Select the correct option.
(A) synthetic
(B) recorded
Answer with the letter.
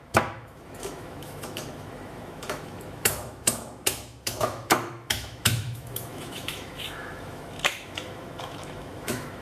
A